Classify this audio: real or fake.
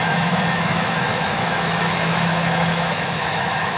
fake